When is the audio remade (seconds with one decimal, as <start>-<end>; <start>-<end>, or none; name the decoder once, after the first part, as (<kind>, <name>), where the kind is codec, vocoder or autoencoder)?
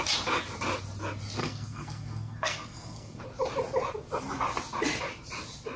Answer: 1.4-3.2 (codec, SNAC)